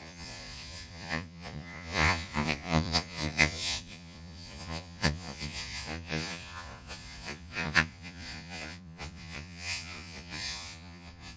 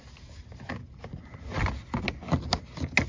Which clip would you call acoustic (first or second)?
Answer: second